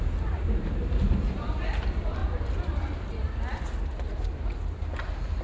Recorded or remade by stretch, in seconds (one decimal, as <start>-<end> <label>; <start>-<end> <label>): 0.0-2.2 remade; 2.2-5.4 recorded